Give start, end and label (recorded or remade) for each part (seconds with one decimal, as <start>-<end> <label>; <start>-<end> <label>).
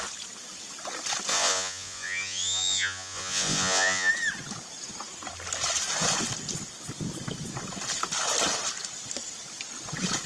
0.0-1.3 recorded; 1.3-4.1 remade; 4.1-10.3 recorded